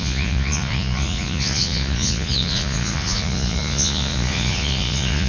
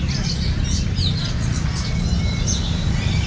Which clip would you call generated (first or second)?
first